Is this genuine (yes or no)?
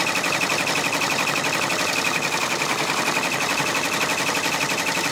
yes